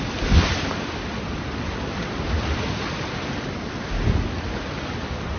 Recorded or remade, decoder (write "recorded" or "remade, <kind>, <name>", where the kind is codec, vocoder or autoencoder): recorded